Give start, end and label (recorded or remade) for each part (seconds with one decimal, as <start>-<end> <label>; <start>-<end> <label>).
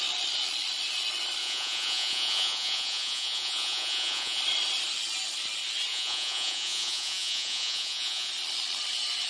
0.0-1.4 recorded; 1.4-4.4 remade; 4.4-5.9 recorded; 5.9-8.3 remade; 8.3-9.3 recorded